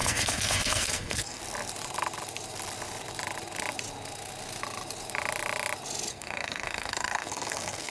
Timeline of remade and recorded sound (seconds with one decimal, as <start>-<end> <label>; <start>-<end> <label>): 0.0-1.4 remade; 1.4-6.1 recorded; 6.1-7.9 remade